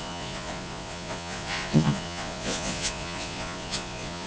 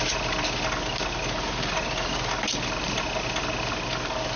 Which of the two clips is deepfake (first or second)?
first